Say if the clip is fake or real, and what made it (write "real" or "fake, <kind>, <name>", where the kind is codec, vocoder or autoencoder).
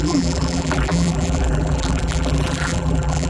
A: fake, vocoder, BigVGAN v2